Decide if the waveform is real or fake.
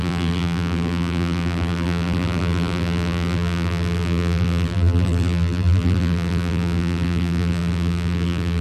fake